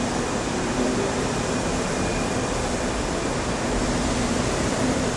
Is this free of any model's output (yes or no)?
yes